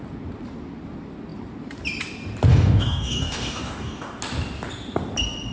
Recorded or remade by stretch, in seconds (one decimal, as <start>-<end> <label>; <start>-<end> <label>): 0.0-2.5 recorded; 2.5-4.2 remade; 4.2-5.5 recorded